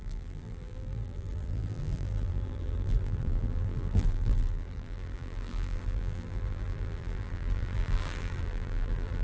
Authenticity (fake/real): fake